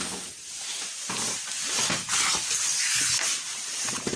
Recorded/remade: recorded